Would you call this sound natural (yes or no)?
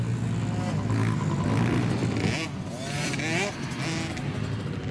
yes